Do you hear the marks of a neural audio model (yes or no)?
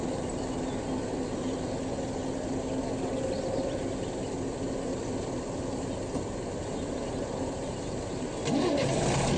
no